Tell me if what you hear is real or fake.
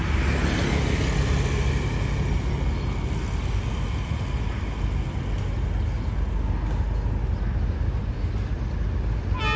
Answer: real